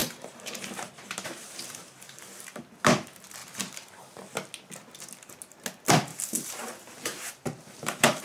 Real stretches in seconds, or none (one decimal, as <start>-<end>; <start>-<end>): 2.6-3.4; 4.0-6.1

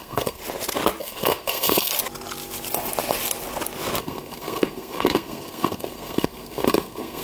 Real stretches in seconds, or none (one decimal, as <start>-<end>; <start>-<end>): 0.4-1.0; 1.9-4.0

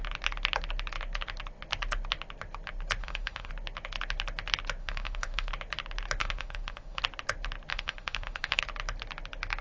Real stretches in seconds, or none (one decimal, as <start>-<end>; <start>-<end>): 0.0-3.0; 3.5-4.8; 5.5-6.2; 7.0-7.7; 8.6-9.6

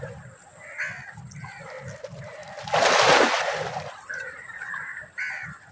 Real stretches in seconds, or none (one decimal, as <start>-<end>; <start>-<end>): 0.5-2.0; 2.4-4.2; 4.9-5.7